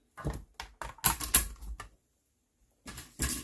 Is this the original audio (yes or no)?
yes